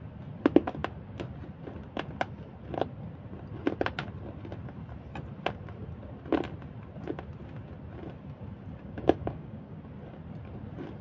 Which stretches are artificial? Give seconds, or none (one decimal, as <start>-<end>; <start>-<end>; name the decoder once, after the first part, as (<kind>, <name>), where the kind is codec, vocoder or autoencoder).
8.8-9.8 (codec, DAC)

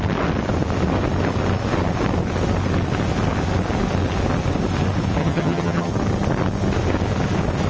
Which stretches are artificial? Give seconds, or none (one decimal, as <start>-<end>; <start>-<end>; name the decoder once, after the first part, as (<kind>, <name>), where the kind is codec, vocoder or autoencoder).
5.2-5.9 (vocoder, HiFi-GAN)

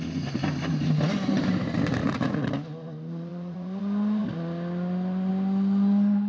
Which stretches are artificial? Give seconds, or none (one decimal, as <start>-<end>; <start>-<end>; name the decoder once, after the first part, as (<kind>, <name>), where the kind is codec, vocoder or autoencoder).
2.0-2.5 (vocoder, Vocos); 3.3-3.8

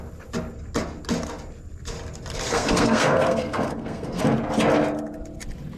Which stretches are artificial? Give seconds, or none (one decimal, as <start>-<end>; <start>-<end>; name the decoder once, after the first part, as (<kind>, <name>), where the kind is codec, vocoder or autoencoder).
2.5-4.2 (codec, SNAC)

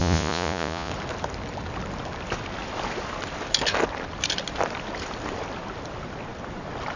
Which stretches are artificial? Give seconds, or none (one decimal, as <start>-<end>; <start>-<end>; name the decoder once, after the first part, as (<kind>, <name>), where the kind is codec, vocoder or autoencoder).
0.0-0.9 (vocoder, Vocos)

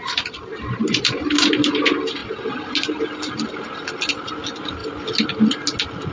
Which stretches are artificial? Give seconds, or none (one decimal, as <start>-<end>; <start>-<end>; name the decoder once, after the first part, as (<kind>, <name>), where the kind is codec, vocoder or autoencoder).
none

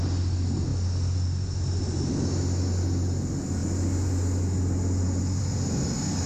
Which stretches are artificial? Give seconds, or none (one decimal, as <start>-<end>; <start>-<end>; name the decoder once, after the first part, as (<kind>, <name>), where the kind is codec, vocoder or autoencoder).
none

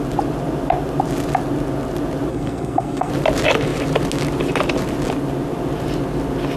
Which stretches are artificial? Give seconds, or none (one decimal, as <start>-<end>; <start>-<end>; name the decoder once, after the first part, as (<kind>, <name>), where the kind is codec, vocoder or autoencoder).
2.3-3.1 (codec, SNAC)